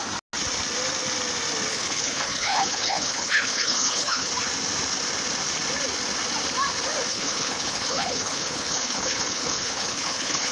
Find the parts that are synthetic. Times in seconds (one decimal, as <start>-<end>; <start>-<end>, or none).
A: 1.7-4.3; 7.1-10.5